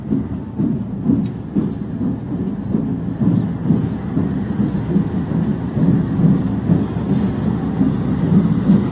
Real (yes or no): yes